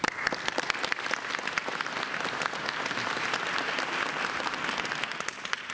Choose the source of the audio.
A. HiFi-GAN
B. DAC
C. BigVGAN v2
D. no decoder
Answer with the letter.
D